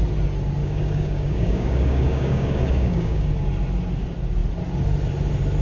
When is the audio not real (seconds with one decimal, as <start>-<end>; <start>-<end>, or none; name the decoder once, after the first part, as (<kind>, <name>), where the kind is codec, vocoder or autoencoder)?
0.6-3.3 (codec, DAC)